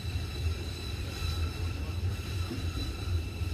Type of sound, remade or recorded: remade